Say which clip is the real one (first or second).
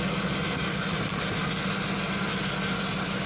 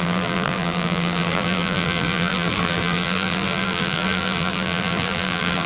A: first